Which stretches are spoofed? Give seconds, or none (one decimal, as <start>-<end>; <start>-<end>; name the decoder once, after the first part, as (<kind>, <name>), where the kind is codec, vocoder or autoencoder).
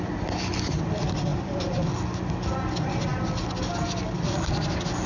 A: 1.3-1.9 (vocoder, BigVGAN v2)